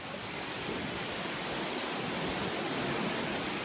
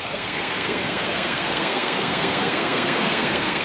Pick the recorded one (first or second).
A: first